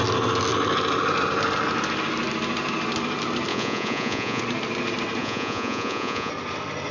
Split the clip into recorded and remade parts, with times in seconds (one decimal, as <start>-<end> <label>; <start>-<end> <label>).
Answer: 0.0-3.5 recorded; 3.5-4.4 remade; 4.4-5.2 recorded; 5.2-6.3 remade; 6.3-6.9 recorded